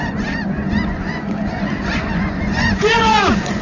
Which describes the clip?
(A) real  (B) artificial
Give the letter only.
B